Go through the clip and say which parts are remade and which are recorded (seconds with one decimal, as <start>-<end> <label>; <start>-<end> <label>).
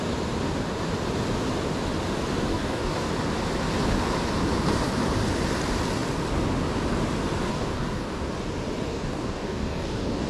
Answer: 0.0-2.5 recorded; 2.5-3.1 remade; 3.1-7.5 recorded; 7.5-8.2 remade; 8.2-8.9 recorded; 8.9-10.3 remade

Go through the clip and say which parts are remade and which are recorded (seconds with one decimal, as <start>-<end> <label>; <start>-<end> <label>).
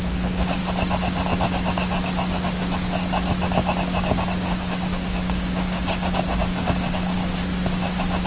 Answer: 0.0-0.6 remade; 0.6-4.5 recorded; 4.5-7.2 remade; 7.2-8.3 recorded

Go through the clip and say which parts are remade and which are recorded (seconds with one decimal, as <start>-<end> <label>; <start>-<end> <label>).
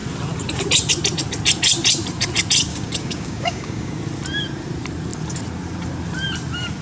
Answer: 0.0-2.7 recorded; 2.7-3.9 remade; 3.9-6.8 recorded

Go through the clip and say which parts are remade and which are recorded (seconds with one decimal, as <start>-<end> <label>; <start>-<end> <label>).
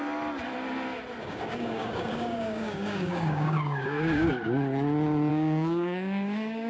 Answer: 0.0-1.2 recorded; 1.2-4.3 remade; 4.3-5.3 recorded; 5.3-6.7 remade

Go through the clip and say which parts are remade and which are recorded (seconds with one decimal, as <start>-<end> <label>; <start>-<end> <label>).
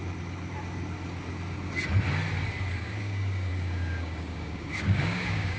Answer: 0.0-2.7 recorded; 2.7-5.6 remade